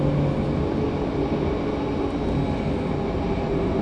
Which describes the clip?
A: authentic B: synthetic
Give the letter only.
A